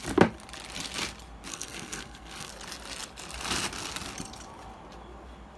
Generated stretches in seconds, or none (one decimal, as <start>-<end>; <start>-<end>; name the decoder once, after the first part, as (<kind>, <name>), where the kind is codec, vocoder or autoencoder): 1.5-2.5 (codec, SNAC)